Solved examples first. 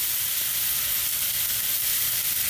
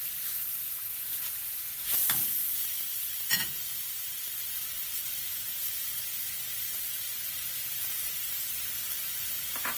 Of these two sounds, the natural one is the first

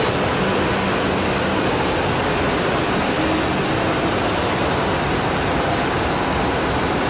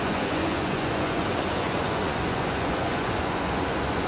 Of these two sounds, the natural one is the first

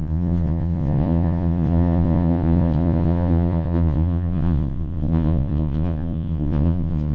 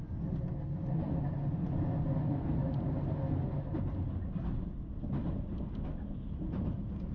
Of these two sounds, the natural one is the second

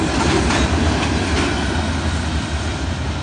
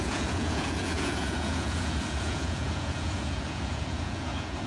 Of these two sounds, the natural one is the first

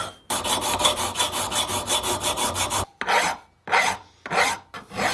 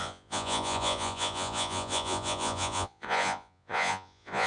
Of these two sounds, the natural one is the first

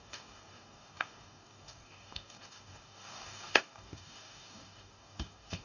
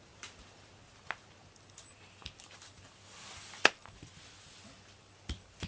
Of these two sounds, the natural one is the second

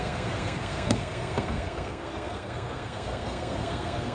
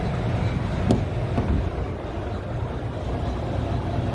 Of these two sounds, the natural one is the second